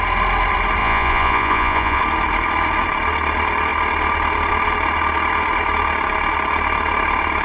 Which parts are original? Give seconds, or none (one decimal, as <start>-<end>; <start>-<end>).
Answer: 0.0-0.8; 2.0-7.4

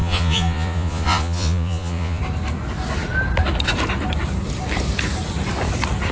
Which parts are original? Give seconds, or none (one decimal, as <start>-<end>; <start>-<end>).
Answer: 2.2-6.1

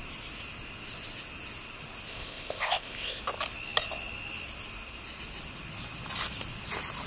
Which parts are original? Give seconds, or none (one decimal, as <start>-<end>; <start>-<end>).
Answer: 0.0-2.1; 3.2-7.1

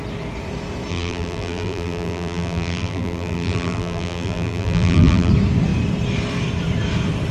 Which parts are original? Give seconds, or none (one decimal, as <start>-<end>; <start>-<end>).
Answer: 0.0-0.9; 5.3-7.3

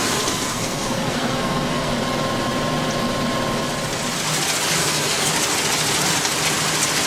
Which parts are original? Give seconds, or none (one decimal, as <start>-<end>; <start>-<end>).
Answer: 1.9-4.8; 5.3-7.1

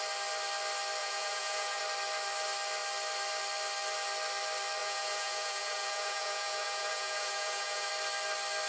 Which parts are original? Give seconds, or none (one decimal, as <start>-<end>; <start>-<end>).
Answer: 0.0-1.0; 1.8-4.8; 7.9-8.7